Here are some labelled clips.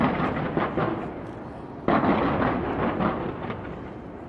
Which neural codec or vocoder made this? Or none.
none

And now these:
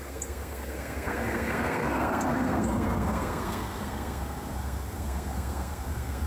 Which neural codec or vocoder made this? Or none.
codec, SNAC